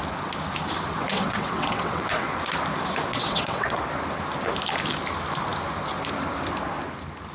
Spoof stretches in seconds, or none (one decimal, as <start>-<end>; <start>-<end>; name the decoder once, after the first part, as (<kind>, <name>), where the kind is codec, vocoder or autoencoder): 1.1-2.4 (vocoder, WaveNeXt); 3.1-3.8